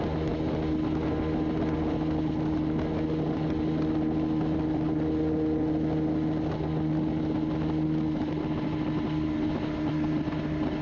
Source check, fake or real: real